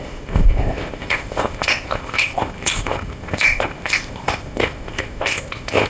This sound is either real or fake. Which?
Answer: fake